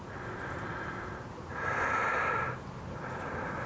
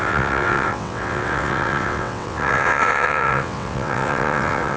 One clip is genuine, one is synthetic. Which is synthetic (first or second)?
second